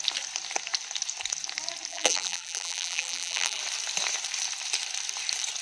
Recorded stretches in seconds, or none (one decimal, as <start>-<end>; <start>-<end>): 0.0-1.9; 3.6-5.6